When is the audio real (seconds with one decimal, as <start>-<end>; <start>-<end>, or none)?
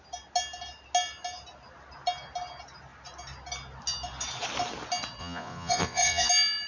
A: 0.0-5.2; 6.3-6.7